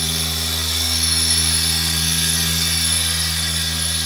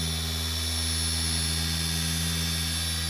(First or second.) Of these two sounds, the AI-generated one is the first